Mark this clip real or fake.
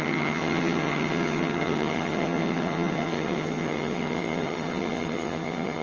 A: fake